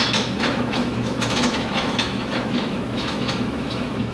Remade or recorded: remade